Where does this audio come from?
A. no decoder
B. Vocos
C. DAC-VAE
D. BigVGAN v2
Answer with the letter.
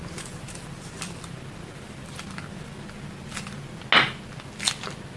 A